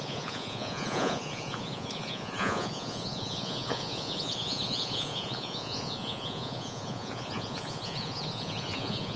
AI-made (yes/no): yes